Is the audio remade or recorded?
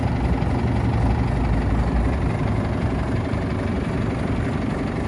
recorded